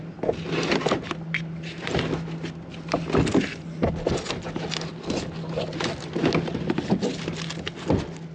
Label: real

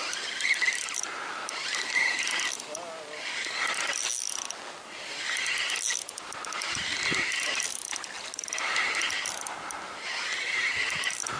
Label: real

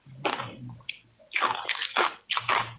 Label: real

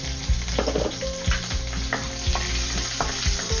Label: real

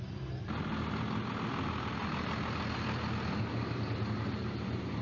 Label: real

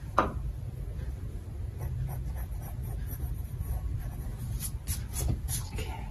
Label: fake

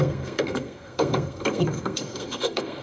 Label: fake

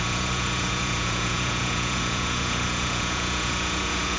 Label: fake